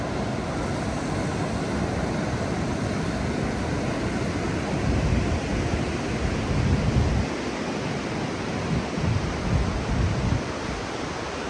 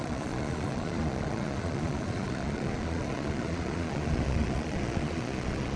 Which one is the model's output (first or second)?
second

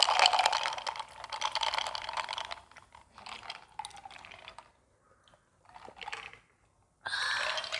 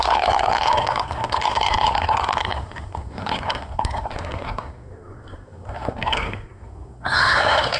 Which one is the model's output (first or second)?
second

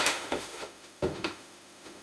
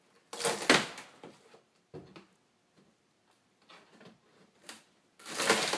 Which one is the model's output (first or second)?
first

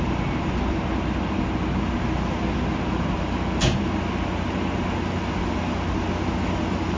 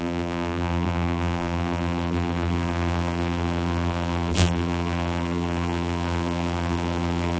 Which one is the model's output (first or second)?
second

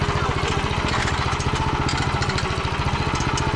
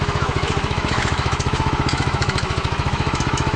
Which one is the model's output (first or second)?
second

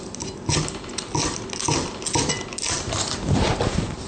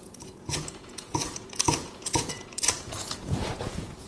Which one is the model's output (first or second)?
second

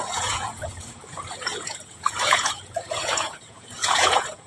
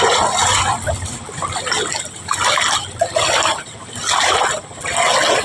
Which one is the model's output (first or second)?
first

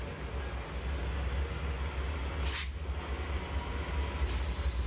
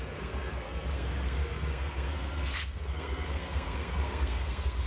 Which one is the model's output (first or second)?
second